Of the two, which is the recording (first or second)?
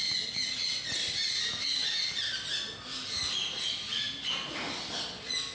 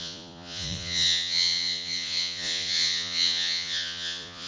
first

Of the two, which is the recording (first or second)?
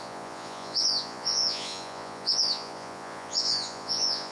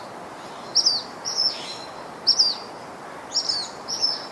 second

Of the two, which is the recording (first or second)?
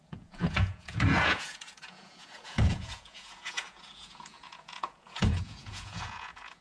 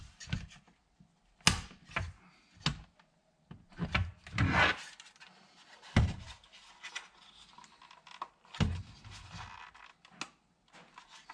second